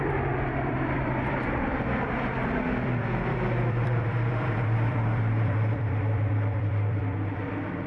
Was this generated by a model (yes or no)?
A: yes